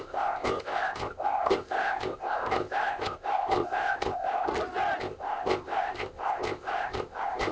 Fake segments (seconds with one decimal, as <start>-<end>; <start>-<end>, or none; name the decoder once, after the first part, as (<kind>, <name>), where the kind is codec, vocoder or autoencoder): 0.0-4.5 (codec, ZipCodec); 5.0-7.5